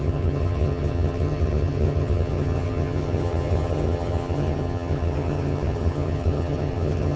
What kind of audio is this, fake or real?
fake